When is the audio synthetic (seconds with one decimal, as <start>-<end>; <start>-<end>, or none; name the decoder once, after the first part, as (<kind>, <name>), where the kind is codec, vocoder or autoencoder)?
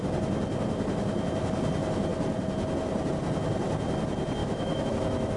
4.4-4.9 (autoencoder, DAC-VAE)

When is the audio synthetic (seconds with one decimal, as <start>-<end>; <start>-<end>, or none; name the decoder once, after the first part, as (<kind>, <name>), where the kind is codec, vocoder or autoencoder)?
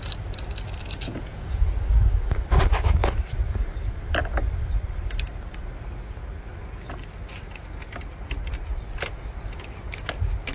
1.1-1.7 (vocoder, Vocos)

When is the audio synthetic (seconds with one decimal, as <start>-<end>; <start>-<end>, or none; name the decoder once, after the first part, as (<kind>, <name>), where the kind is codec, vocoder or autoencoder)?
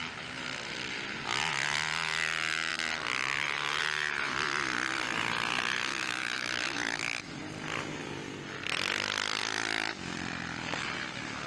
5.9-7.3 (autoencoder, DAC-VAE)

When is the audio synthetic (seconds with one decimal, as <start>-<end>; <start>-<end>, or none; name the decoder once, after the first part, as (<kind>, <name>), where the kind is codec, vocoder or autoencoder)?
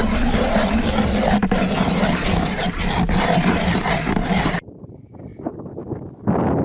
0.0-5.3 (vocoder, BigVGAN v2)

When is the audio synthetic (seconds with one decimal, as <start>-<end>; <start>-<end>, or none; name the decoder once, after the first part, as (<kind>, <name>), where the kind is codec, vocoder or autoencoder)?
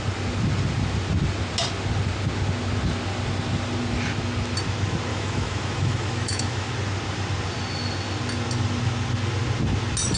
5.1-6.7 (autoencoder, DAC-VAE)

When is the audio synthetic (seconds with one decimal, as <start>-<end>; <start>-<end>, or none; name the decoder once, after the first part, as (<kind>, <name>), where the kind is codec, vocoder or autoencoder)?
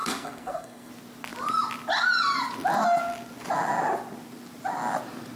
0.0-0.9 (codec, SNAC)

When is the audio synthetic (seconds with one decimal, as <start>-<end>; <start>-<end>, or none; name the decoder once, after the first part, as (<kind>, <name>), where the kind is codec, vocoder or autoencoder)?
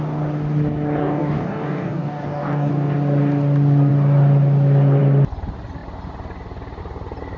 1.0-2.7 (codec, DAC)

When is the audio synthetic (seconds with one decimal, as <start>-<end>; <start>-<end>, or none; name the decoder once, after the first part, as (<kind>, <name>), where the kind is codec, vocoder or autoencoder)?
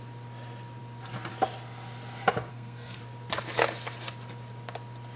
2.5-3.0 (codec, SNAC)